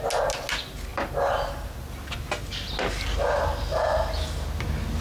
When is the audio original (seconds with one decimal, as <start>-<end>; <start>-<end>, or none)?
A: 0.0-5.0